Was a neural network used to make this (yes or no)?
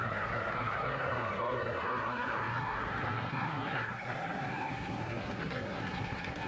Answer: yes